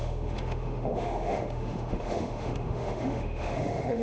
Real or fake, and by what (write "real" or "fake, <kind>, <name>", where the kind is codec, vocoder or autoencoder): fake, autoencoder, DAC-VAE